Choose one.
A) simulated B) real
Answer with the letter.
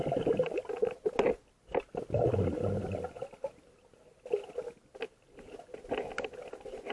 B